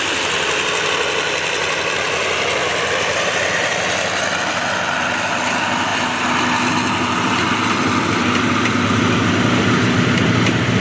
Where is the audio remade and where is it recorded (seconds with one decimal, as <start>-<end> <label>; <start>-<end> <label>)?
0.0-10.8 recorded